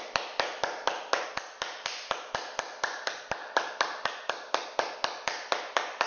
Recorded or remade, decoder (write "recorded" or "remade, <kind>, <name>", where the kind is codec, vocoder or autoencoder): recorded